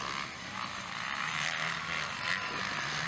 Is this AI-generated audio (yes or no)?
no